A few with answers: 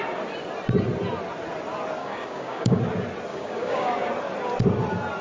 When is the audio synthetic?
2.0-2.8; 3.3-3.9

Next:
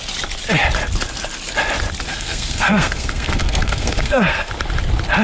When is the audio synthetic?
2.1-4.5